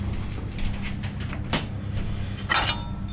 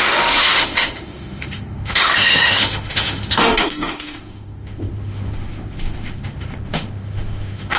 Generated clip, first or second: second